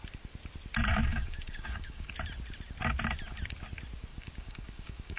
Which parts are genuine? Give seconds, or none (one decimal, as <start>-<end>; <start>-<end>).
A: 0.0-1.1; 2.1-4.1